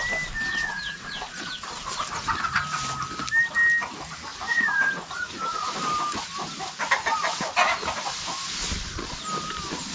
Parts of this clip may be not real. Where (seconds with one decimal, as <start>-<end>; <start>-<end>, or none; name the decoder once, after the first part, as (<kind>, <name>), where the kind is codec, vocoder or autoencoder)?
0.5-1.5 (vocoder, Vocos); 4.3-5.7